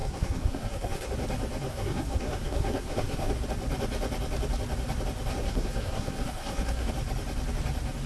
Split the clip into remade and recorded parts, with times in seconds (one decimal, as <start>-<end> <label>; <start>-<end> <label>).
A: 0.0-1.1 remade; 1.1-1.7 recorded; 1.7-3.3 remade; 3.3-5.3 recorded; 5.3-6.9 remade; 6.9-8.1 recorded